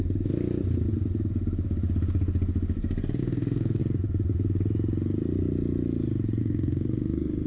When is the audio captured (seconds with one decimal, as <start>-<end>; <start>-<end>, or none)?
0.0-3.2; 3.8-6.4